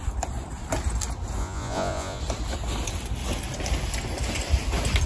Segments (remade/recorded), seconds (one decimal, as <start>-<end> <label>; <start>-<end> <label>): 0.0-1.4 recorded; 1.4-2.2 remade; 2.2-5.1 recorded